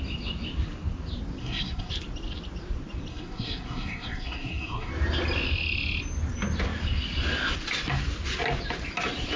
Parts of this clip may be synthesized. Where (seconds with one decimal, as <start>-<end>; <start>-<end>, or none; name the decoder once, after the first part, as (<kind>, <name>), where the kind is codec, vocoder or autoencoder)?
1.4-1.9 (codec, SNAC); 3.1-4.9